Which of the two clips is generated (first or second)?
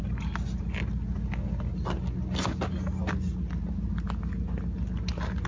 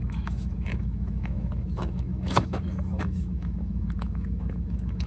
second